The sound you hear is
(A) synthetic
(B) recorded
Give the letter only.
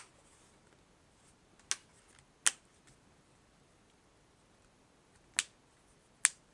B